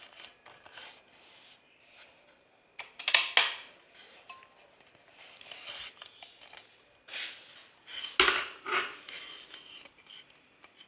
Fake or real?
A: real